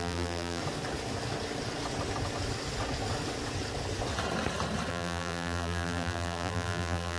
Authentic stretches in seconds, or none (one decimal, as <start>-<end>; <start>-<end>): 0.6-4.9